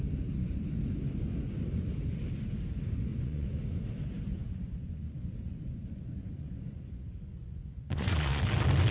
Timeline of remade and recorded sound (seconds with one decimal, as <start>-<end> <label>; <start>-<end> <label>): 0.0-3.1 recorded; 3.1-3.6 remade; 3.6-4.3 recorded; 4.3-8.4 remade; 8.4-8.9 recorded